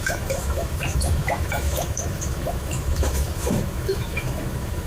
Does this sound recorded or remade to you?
remade